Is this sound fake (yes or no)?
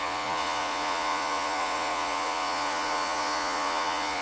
yes